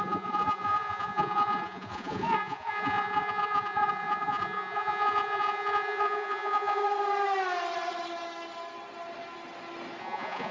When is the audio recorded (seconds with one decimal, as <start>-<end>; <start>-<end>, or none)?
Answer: 6.8-10.0